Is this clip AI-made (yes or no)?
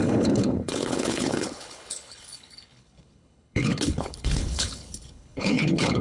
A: yes